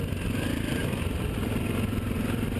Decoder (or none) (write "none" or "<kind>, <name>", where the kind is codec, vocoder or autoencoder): none